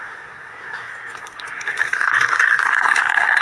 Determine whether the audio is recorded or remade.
remade